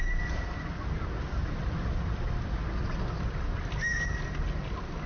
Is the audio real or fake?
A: real